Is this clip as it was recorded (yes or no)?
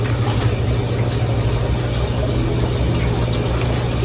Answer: yes